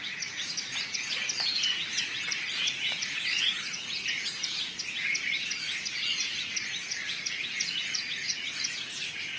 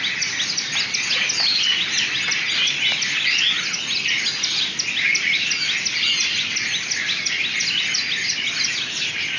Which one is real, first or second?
second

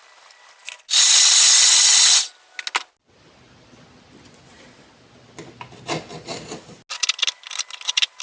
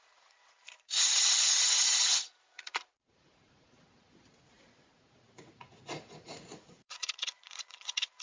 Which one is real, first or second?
first